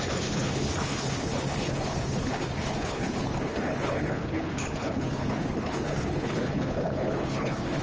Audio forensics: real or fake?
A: fake